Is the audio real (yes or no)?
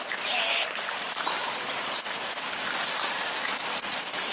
yes